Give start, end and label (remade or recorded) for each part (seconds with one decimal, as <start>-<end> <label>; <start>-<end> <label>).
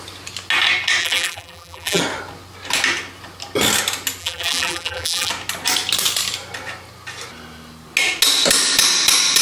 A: 0.0-1.0 recorded; 1.0-2.0 remade; 2.0-4.2 recorded; 4.2-5.3 remade; 5.3-9.4 recorded